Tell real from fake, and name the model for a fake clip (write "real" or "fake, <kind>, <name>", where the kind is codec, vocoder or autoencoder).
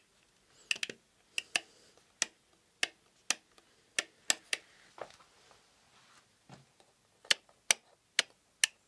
real